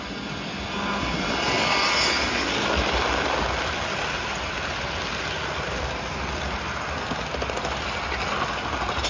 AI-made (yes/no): no